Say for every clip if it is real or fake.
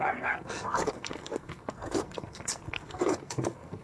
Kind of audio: fake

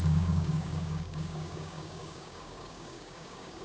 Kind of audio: fake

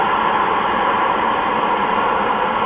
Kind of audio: real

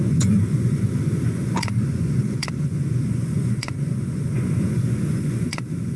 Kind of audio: fake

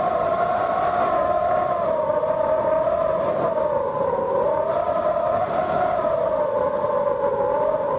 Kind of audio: real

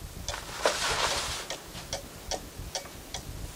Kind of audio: real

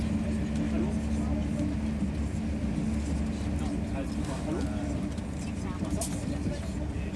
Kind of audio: real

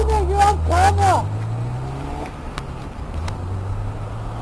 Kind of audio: real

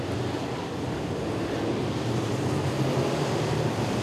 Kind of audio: real